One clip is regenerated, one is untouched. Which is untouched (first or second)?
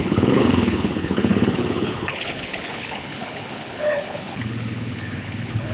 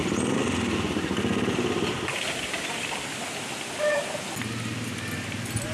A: second